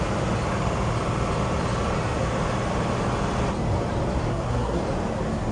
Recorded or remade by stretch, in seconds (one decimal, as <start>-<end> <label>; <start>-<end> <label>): 0.0-4.3 recorded; 4.3-4.8 remade; 4.8-5.5 recorded